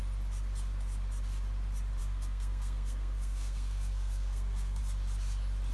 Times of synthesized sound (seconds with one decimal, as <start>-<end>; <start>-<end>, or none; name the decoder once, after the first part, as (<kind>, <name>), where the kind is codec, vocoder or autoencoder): 2.0-4.8 (codec, SNAC)